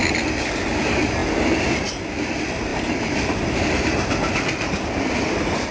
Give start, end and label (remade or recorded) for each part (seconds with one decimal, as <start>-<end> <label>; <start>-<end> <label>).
0.0-2.7 recorded; 2.7-4.8 remade; 4.8-5.7 recorded